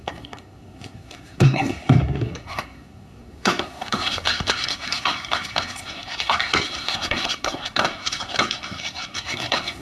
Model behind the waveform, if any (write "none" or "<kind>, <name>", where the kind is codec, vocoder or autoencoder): codec, SNAC